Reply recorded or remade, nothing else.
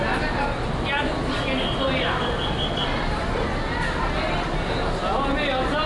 recorded